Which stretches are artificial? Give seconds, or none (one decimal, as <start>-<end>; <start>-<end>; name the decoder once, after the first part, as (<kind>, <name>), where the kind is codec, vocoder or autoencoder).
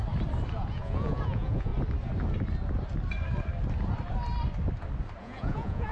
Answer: 0.7-1.7 (vocoder, Vocos); 5.2-5.9